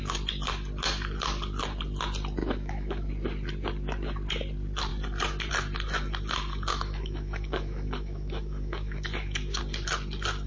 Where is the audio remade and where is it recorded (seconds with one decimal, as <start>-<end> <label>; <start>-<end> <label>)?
0.0-2.4 recorded; 2.4-3.1 remade; 3.1-6.7 recorded; 6.7-9.6 remade; 9.6-10.5 recorded